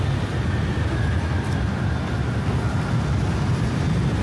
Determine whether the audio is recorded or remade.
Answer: recorded